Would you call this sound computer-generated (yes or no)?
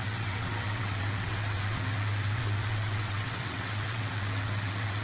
yes